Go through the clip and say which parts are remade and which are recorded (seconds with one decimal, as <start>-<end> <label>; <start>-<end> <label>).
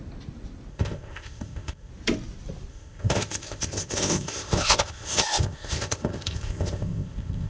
0.0-0.7 recorded; 0.7-1.9 remade; 1.9-2.7 recorded; 2.7-7.5 remade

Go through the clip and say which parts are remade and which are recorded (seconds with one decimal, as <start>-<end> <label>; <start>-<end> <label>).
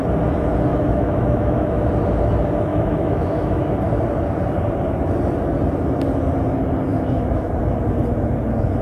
0.0-0.7 recorded; 0.7-1.9 remade; 1.9-2.7 recorded; 2.7-3.6 remade; 3.6-6.9 recorded; 6.9-7.5 remade; 7.5-8.8 recorded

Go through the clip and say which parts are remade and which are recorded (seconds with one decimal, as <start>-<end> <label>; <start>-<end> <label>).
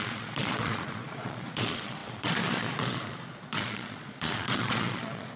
0.0-5.4 remade